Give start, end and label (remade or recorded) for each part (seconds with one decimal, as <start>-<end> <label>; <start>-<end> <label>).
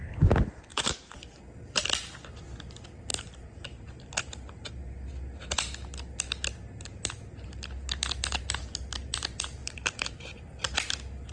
0.0-0.7 recorded; 0.7-1.4 remade; 1.4-3.1 recorded; 3.1-4.7 remade; 4.7-9.6 recorded; 9.6-10.3 remade; 10.3-11.3 recorded